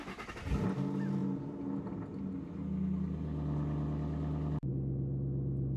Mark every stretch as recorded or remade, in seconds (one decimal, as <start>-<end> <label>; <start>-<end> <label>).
0.0-5.8 recorded

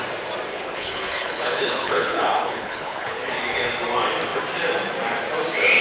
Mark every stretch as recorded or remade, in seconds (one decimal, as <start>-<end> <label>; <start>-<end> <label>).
0.0-0.5 recorded; 0.5-3.3 remade; 3.3-5.8 recorded

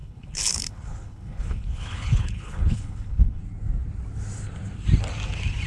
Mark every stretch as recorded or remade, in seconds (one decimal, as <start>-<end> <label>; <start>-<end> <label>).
0.0-3.4 remade; 3.4-5.7 recorded

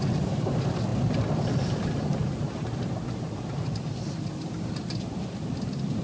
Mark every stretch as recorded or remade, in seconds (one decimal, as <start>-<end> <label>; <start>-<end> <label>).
0.0-6.0 recorded

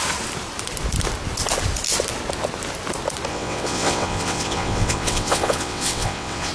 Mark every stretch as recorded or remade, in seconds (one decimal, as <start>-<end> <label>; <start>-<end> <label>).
0.0-3.3 recorded; 3.3-6.5 remade